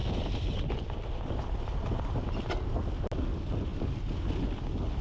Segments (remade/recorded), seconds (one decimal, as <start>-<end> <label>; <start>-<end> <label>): 0.0-2.4 remade; 2.4-5.0 recorded